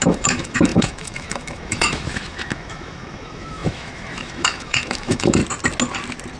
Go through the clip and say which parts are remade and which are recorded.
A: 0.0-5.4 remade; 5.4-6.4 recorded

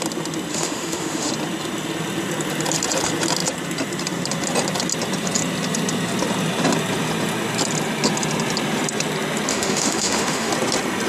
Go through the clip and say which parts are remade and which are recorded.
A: 0.0-0.5 recorded; 0.5-1.3 remade; 1.3-9.5 recorded; 9.5-10.5 remade; 10.5-11.1 recorded

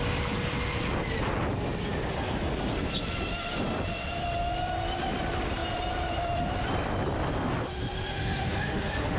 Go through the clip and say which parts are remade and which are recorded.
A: 0.0-8.1 recorded; 8.1-9.2 remade

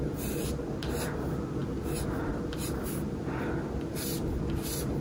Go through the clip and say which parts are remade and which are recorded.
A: 0.0-5.0 recorded

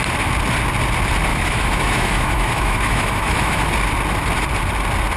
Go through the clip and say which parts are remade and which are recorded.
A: 0.0-1.3 recorded; 1.3-3.7 remade; 3.7-5.2 recorded

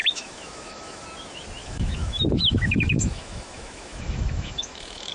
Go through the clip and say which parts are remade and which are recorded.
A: 0.0-1.0 remade; 1.0-1.6 recorded; 1.6-5.1 remade

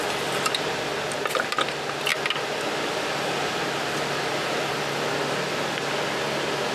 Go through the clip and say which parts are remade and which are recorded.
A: 0.0-6.7 recorded

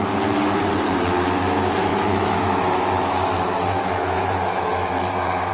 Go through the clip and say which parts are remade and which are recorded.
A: 0.0-1.9 recorded; 1.9-5.5 remade